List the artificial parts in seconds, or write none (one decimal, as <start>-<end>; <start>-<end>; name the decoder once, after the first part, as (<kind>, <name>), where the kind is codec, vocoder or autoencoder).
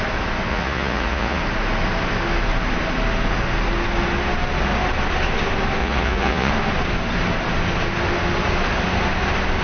0.5-1.4 (vocoder, Vocos); 5.8-6.5